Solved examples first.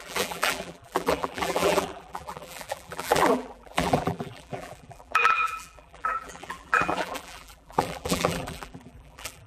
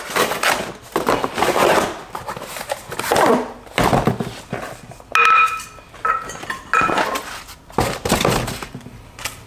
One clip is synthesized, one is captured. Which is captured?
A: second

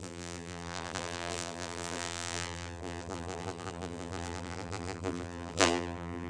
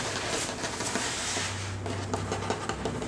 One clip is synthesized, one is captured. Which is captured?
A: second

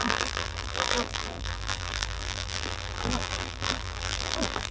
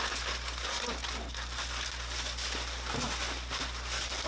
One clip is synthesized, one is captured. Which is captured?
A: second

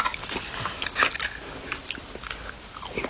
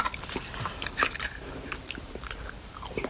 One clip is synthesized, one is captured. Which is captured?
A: first